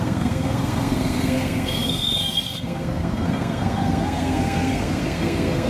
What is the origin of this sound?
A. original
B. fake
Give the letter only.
B